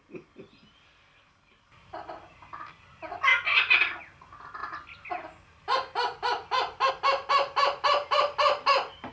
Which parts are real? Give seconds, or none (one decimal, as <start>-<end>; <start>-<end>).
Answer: 0.0-9.1